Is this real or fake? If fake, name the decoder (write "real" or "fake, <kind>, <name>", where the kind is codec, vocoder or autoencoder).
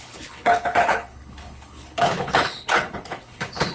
fake, codec, HILCodec